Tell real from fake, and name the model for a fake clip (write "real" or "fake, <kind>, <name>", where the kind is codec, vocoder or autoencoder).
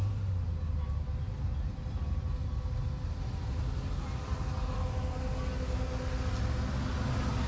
real